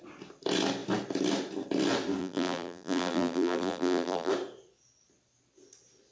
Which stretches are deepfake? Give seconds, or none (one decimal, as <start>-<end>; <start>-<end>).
2.2-4.3